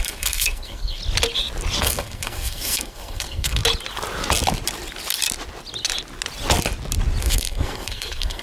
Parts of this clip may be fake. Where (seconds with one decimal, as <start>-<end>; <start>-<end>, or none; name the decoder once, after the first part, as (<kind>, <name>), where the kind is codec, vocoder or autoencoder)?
0.0-1.0 (codec, SNAC); 1.8-3.6; 7.2-8.4